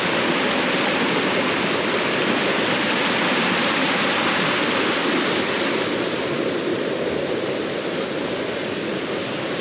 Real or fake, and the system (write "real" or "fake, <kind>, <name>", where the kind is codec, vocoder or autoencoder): real